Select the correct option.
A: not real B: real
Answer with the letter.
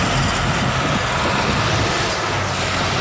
B